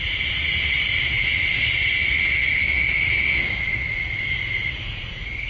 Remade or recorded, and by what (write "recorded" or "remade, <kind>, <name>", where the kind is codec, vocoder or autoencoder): remade, vocoder, Vocos